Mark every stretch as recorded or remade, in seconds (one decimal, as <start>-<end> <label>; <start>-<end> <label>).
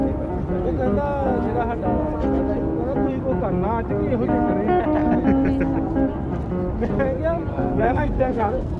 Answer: 0.0-7.5 recorded; 7.5-8.8 remade